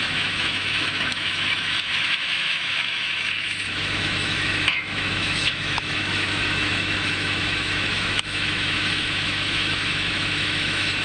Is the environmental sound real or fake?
fake